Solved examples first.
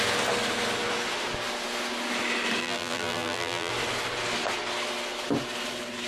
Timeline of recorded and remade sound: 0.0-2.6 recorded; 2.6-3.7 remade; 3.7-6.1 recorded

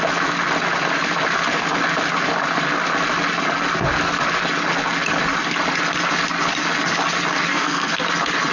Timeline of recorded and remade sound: 0.0-7.5 recorded; 7.5-8.0 remade; 8.0-8.5 recorded